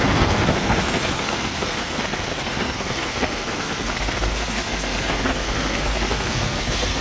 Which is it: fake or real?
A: fake